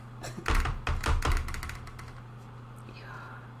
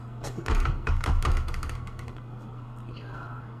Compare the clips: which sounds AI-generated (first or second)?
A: second